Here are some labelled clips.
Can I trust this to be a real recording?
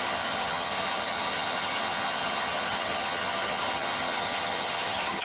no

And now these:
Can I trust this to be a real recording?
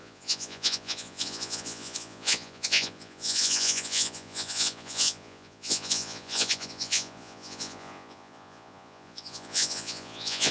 no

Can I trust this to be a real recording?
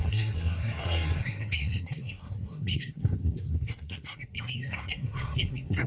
no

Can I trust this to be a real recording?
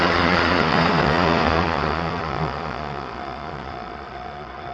no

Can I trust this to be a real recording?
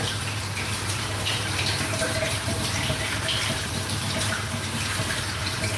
no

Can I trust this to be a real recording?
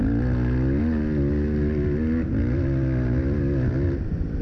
yes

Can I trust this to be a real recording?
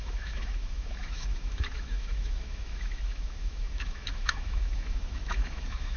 no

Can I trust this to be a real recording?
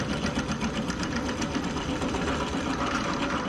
yes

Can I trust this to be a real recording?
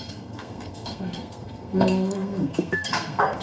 no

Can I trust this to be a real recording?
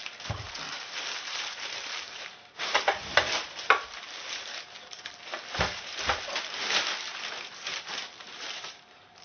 no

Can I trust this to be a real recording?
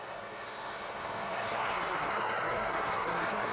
no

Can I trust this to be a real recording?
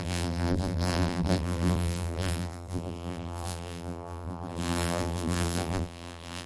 no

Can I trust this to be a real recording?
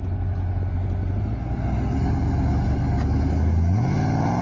yes